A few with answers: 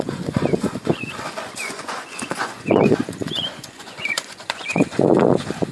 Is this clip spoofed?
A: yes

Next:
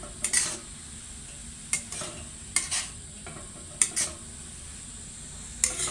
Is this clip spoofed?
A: no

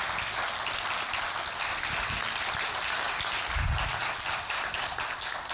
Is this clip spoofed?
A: no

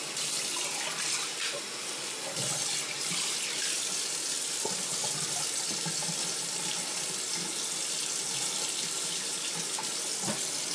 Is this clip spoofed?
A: no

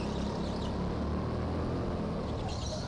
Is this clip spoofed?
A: no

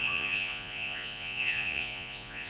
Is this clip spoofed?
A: yes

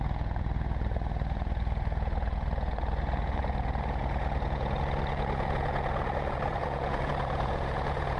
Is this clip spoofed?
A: yes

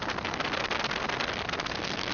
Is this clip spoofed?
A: no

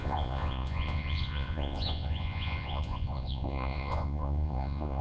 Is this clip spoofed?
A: yes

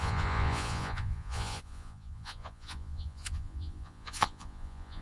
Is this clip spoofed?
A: yes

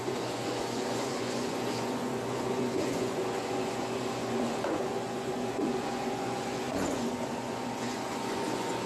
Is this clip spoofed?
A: yes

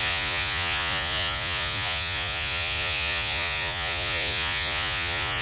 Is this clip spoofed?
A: yes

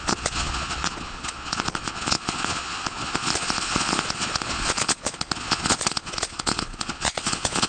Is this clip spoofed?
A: yes